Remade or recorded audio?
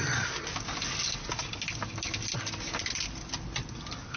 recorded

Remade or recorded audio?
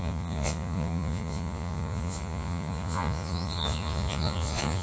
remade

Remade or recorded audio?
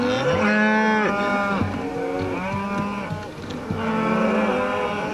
recorded